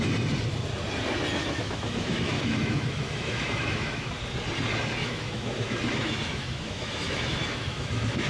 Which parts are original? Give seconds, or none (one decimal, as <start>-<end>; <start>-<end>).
0.0-1.4; 4.1-5.0